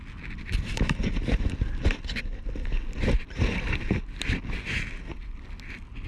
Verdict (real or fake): real